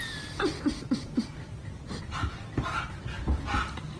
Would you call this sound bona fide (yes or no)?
yes